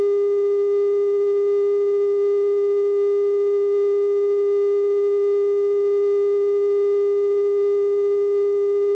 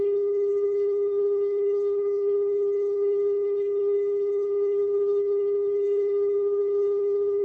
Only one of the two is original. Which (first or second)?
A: first